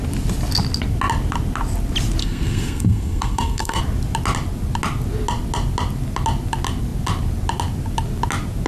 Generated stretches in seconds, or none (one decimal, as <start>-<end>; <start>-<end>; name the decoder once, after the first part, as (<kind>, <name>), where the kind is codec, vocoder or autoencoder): 2.2-3.8 (codec, SNAC)